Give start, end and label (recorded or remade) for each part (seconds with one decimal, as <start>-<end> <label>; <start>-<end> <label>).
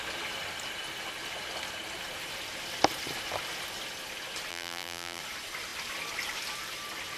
0.0-4.5 recorded; 4.5-5.2 remade; 5.2-7.2 recorded